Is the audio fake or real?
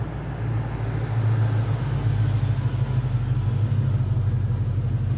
real